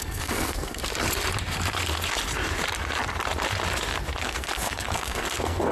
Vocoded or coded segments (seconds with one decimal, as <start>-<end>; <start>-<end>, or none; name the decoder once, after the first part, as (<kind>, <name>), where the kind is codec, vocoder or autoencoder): 0.0-0.8 (codec, SNAC); 4.2-5.7